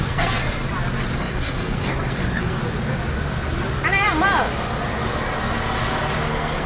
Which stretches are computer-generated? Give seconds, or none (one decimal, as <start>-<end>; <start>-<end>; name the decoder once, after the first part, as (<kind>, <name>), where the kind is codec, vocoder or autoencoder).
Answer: 0.0-0.4 (codec, SNAC); 1.2-2.6; 6.3-6.7